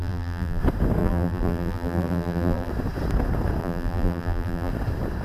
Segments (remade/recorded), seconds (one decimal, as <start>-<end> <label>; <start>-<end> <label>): 0.0-0.6 remade; 0.6-1.0 recorded; 1.0-2.7 remade; 2.7-3.6 recorded; 3.6-4.7 remade; 4.7-5.2 recorded